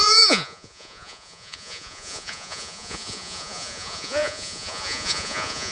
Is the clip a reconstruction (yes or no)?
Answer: yes